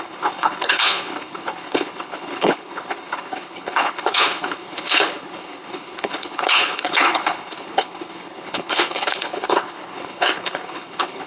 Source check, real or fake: fake